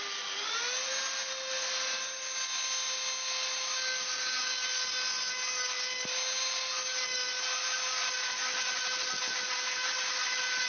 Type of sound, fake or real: real